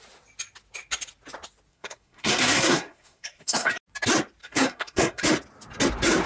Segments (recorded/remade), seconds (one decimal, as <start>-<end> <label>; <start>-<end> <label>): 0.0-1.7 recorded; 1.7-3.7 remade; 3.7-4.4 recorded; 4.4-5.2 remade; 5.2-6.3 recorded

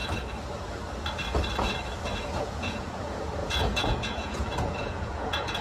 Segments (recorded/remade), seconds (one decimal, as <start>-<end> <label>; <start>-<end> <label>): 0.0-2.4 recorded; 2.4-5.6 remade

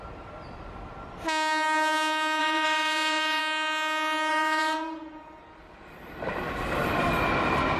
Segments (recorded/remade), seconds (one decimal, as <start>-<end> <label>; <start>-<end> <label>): 0.0-2.4 recorded; 2.4-3.4 remade; 3.4-4.3 recorded; 4.3-5.4 remade; 5.4-7.8 recorded

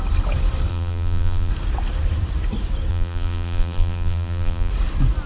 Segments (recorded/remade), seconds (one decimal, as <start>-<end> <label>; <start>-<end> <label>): 0.0-0.7 recorded; 0.7-1.5 remade; 1.5-2.9 recorded; 2.9-4.7 remade; 4.7-5.3 recorded